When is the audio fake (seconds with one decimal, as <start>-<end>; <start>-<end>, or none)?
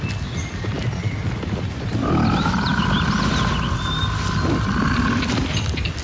none